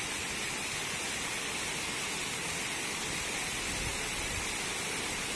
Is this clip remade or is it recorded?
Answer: recorded